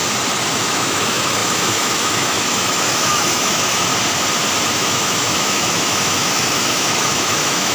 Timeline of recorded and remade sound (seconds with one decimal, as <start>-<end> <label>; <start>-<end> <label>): 0.0-0.5 recorded; 0.5-3.9 remade; 3.9-4.7 recorded; 4.7-7.7 remade